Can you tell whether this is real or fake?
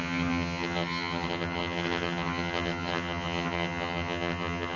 fake